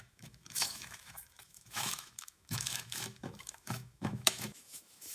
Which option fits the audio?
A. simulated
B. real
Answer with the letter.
A